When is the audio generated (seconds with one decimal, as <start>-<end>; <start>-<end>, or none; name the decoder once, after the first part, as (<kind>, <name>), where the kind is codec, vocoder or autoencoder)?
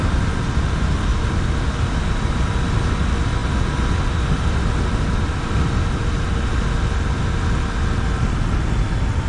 none